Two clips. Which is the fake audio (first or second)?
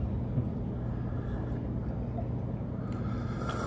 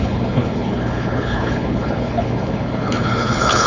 second